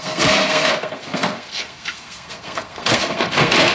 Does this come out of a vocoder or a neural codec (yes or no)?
yes